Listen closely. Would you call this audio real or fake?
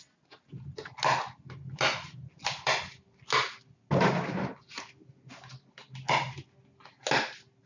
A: real